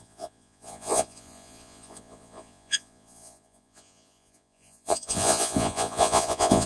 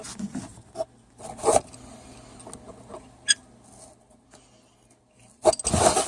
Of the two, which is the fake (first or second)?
first